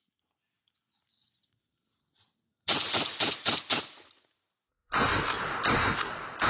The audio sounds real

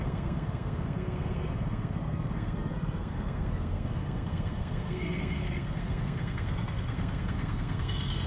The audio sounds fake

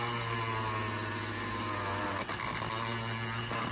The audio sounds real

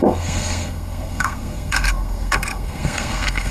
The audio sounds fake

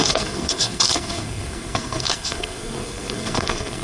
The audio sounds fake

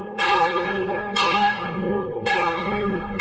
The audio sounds fake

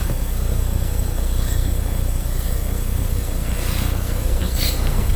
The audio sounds fake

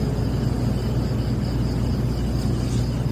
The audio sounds real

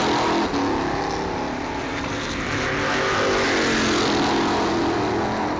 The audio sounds real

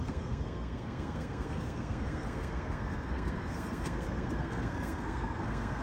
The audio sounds fake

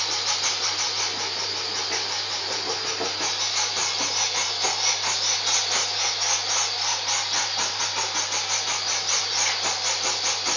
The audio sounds real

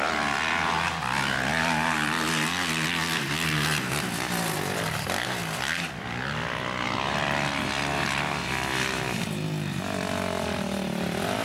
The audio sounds real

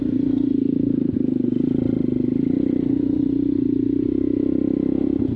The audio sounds real